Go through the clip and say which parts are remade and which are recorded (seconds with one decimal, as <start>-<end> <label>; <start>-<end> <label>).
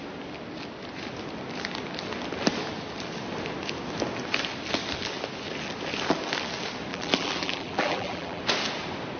0.0-6.9 recorded; 6.9-8.4 remade; 8.4-9.2 recorded